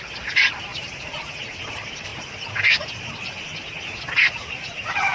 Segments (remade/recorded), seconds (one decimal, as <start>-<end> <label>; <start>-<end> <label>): 0.0-2.1 remade; 2.1-4.6 recorded; 4.6-5.1 remade